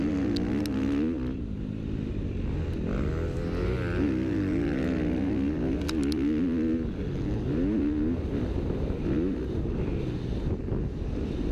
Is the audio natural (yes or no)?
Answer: yes